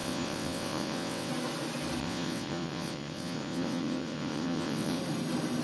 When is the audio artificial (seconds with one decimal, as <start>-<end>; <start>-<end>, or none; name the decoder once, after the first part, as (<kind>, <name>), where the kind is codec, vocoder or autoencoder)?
0.0-1.3 (vocoder, WaveNeXt); 2.0-5.0